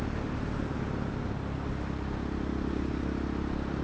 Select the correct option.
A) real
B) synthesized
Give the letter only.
A